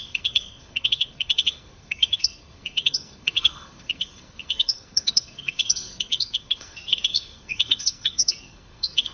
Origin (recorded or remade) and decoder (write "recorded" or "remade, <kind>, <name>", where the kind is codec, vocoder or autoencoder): remade, codec, SNAC